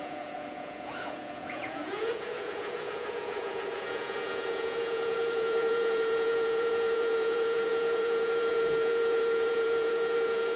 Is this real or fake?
fake